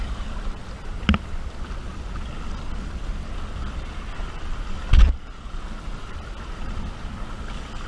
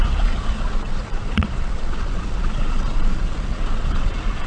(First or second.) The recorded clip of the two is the first